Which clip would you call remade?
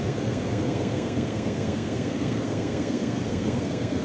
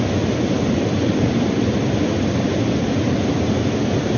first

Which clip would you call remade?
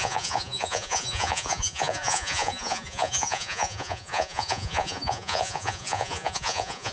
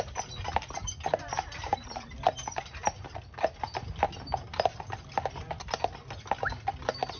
first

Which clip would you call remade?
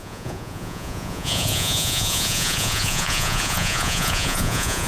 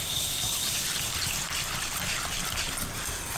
first